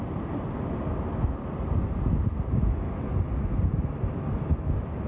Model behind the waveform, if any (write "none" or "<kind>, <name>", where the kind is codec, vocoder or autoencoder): none